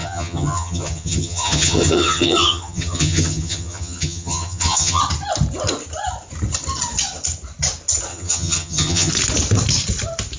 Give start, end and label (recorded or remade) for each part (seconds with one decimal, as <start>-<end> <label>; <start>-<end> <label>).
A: 0.0-5.0 remade; 5.0-8.1 recorded; 8.1-9.1 remade; 9.1-10.4 recorded